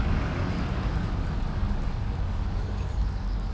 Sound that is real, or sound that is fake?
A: fake